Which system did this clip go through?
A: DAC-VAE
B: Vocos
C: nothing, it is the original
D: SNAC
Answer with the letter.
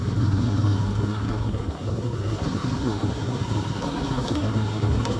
D